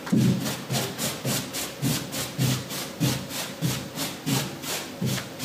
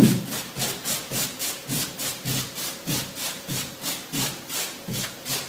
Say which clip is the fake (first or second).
second